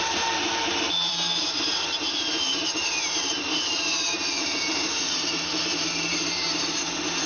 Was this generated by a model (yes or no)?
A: yes